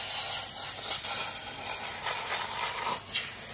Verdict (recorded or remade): recorded